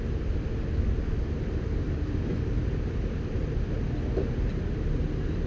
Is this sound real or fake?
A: real